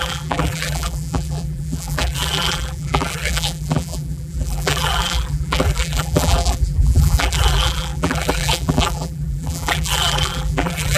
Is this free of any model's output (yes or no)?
no